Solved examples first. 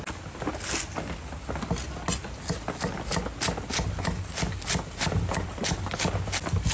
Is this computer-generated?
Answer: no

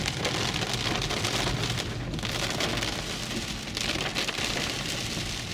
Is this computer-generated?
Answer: no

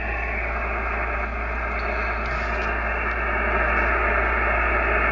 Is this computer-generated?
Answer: no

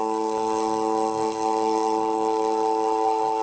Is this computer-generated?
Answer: yes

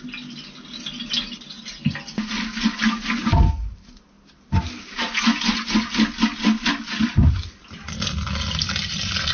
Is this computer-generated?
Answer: no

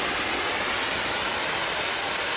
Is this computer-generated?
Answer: no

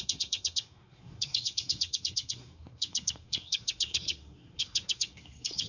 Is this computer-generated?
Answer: yes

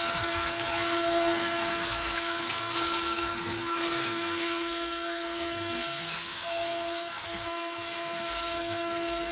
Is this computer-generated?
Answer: yes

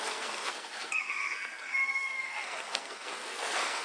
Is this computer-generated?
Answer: yes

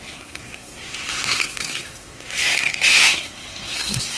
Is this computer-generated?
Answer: yes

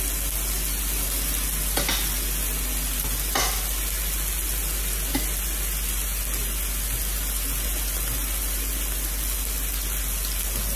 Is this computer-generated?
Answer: no